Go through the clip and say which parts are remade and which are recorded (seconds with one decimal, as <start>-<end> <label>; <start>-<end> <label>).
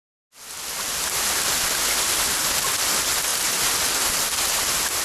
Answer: 0.0-5.0 recorded